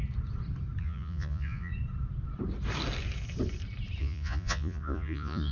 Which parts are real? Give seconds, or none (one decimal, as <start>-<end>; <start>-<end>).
0.0-0.8; 1.7-4.0